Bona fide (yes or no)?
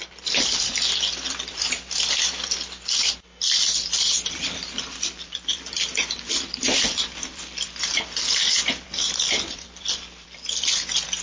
no